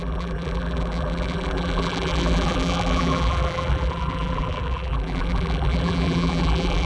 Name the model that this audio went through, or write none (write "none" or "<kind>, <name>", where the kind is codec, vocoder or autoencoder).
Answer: vocoder, BigVGAN v2